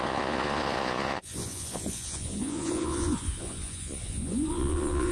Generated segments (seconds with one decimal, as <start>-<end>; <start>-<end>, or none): 0.0-5.1